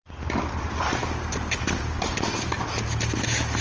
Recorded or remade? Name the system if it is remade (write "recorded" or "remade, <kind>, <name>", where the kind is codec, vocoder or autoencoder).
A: recorded